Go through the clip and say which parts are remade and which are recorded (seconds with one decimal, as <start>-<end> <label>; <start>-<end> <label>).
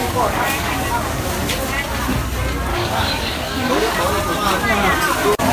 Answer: 0.0-1.3 remade; 1.3-2.7 recorded; 2.7-4.0 remade; 4.0-5.5 recorded